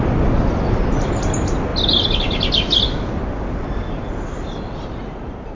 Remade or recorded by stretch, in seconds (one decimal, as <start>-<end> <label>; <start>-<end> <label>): 0.0-5.5 recorded